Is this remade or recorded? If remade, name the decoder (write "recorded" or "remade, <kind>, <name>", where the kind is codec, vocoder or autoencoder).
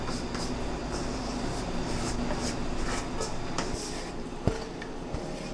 recorded